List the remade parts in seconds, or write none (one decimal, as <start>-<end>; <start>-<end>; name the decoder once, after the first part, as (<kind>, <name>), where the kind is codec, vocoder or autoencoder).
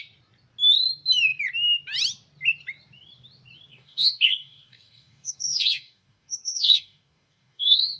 3.7-8.0 (codec, DAC)